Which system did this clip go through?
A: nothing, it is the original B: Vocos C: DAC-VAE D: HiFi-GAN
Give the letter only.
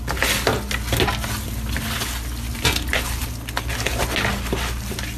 A